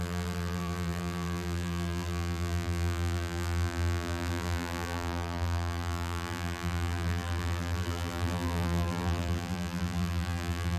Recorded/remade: remade